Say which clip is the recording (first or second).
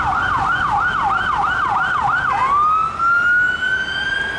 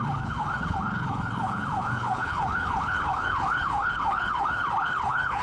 first